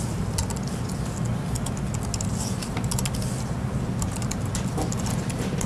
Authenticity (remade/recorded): recorded